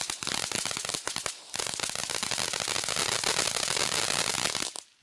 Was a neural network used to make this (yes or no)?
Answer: no